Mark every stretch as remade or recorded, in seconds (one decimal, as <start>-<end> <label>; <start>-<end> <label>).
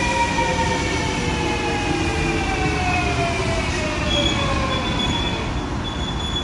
0.0-6.4 recorded